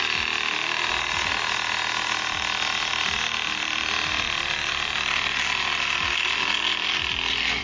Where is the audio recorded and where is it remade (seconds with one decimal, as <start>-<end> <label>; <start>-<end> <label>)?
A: 0.0-2.9 recorded; 2.9-7.6 remade